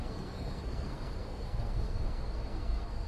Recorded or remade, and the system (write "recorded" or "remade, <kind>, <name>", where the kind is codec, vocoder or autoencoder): remade, codec, SNAC